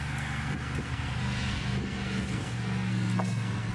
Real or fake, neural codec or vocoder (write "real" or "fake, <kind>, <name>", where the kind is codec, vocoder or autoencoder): fake, codec, SNAC